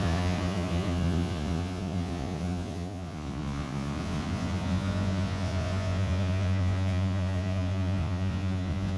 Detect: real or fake fake